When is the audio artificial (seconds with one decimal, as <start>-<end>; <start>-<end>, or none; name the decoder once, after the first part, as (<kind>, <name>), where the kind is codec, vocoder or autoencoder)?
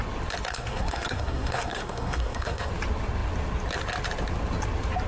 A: 0.5-2.7 (codec, SNAC)